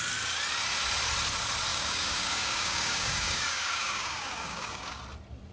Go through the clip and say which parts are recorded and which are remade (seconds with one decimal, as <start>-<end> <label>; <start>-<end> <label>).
0.0-1.7 recorded; 1.7-5.0 remade; 5.0-5.5 recorded